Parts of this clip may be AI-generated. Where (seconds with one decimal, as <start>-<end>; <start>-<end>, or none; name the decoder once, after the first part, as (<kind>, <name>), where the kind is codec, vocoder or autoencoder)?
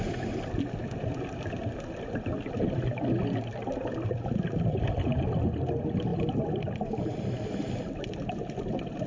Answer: none